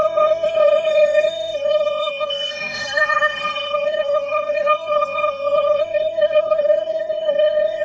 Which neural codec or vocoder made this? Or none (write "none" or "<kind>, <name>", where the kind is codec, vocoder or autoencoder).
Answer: codec, SNAC